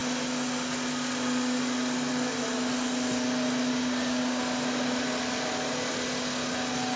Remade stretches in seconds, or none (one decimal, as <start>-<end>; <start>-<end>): 3.7-4.4